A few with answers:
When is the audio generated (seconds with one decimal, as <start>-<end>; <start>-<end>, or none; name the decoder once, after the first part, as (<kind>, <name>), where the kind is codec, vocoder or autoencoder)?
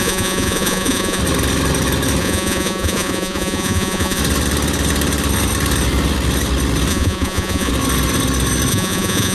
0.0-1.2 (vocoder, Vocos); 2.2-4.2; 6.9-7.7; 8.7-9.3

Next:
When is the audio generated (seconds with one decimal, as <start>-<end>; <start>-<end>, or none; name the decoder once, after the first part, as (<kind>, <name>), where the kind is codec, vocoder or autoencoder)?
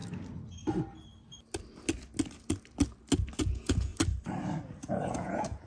3.4-3.9 (vocoder, Vocos); 4.8-5.7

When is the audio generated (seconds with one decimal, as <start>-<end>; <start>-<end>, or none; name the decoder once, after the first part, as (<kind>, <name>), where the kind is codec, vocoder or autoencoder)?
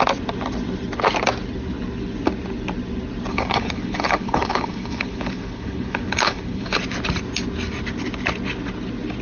3.3-6.8 (codec, HILCodec)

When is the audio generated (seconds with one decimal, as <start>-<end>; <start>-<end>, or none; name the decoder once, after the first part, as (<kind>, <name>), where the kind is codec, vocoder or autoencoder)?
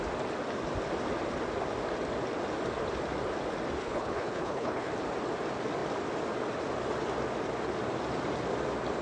3.8-4.9 (codec, HILCodec)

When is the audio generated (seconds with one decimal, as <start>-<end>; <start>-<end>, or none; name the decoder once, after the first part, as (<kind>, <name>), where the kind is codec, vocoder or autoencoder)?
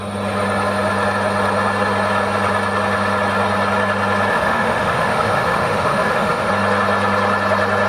4.3-6.5 (autoencoder, DAC-VAE)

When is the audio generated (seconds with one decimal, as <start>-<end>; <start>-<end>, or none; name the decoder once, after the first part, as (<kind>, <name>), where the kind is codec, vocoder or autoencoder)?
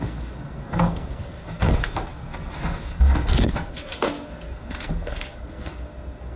0.0-6.4 (codec, SNAC)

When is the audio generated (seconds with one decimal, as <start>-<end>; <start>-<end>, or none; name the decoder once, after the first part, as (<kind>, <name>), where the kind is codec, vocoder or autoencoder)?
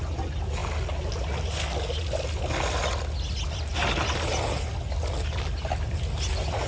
none